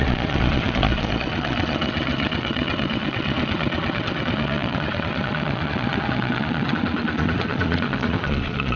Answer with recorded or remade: remade